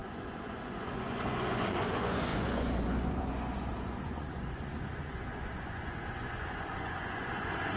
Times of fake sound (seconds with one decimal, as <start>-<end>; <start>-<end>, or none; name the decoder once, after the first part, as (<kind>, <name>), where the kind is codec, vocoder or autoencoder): 0.0-7.8 (vocoder, Vocos)